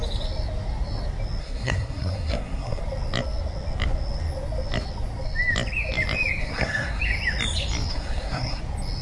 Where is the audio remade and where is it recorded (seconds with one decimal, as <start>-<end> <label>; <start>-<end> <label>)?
0.0-1.4 recorded; 1.4-2.8 remade; 2.8-6.4 recorded; 6.4-7.0 remade; 7.0-7.9 recorded; 7.9-8.6 remade; 8.6-9.0 recorded